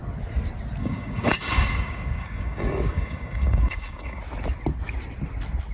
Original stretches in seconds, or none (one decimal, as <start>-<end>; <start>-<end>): 0.0-0.8; 4.2-5.7